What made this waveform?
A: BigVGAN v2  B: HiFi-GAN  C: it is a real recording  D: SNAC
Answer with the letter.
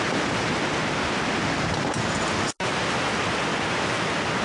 C